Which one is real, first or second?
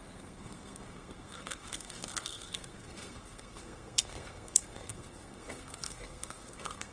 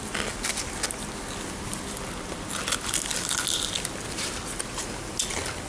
second